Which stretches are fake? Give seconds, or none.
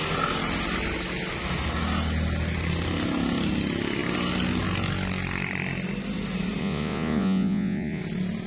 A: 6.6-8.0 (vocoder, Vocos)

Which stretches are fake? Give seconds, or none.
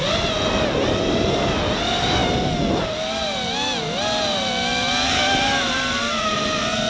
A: none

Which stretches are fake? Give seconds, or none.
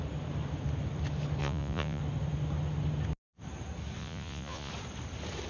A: 1.4-2.0 (vocoder, Vocos); 4.0-4.7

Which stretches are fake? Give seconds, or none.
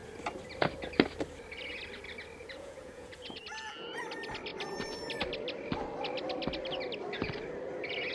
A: 2.4-3.4 (vocoder, Vocos)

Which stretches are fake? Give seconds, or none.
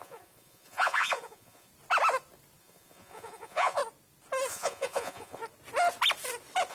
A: 0.0-1.7 (vocoder, Vocos); 2.6-3.8; 4.5-5.4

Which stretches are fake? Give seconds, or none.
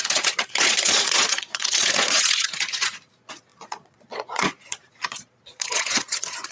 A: 0.0-6.5 (vocoder, Vocos)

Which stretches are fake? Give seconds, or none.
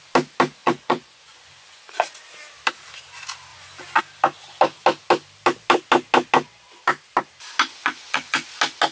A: 0.6-2.2 (vocoder, Vocos); 3.5-4.0; 7.8-8.5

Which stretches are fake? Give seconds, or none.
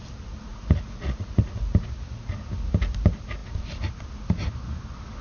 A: 0.5-1.6 (vocoder, Vocos)